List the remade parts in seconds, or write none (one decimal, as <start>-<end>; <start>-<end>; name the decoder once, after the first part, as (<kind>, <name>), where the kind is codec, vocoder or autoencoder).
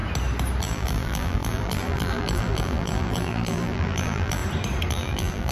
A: 0.6-4.4 (vocoder, BigVGAN v2); 4.9-5.5